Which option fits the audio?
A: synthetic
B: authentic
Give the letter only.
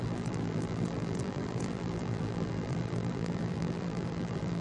A